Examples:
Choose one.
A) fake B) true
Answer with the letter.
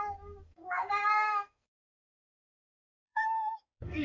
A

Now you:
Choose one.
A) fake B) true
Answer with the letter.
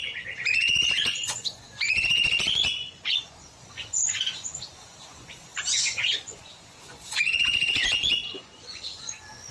A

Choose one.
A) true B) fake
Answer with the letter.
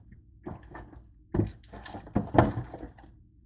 A